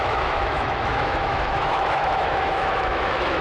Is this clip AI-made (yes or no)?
yes